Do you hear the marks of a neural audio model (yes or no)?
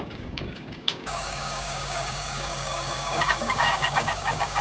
yes